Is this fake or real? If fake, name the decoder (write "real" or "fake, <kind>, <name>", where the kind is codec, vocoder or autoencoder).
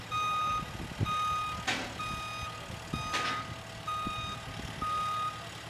real